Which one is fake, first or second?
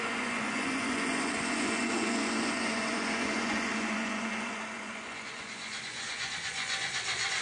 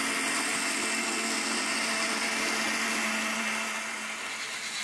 first